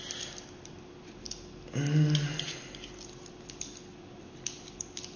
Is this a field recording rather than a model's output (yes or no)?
yes